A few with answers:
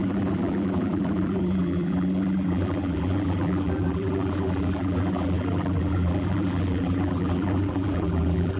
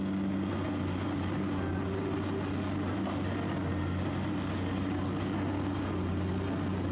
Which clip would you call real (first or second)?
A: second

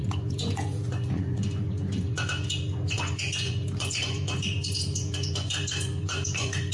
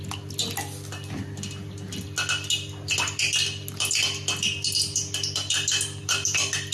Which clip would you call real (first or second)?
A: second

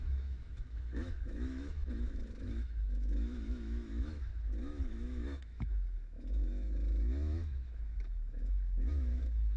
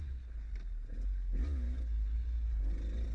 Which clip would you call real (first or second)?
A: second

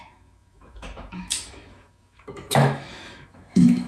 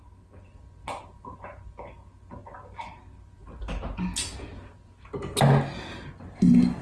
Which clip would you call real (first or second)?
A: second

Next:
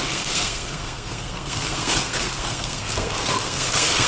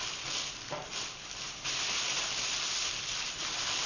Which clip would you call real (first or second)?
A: second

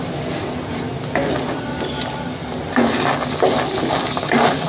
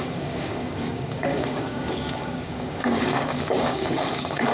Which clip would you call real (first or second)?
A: first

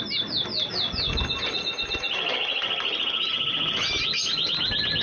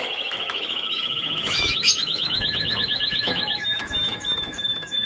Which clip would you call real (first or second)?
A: first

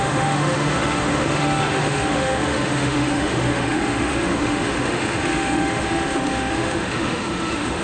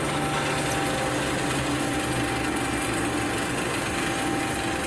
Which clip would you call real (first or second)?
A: second